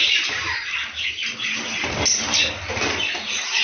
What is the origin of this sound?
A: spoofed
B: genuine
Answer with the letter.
B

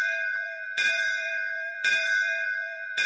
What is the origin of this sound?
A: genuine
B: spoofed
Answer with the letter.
B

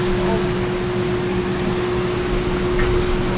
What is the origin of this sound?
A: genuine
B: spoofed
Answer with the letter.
A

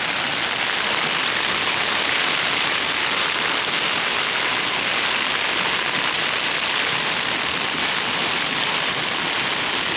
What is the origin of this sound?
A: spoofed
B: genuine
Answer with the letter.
B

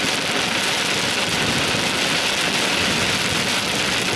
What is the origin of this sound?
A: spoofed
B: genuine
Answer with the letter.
B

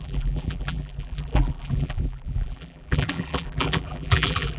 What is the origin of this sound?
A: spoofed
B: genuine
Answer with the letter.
A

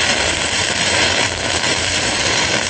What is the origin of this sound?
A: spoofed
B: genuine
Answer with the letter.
A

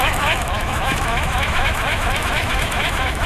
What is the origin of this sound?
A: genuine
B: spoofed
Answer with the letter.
B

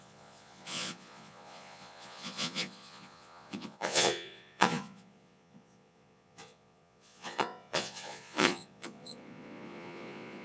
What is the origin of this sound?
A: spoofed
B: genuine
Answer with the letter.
A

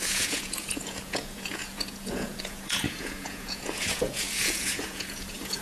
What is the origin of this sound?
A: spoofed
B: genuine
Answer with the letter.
A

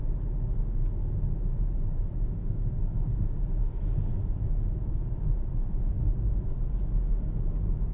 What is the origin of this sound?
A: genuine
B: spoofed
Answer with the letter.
A